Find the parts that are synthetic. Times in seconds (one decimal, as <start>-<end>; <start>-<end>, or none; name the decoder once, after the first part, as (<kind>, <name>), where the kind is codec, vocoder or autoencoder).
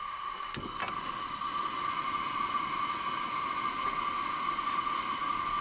none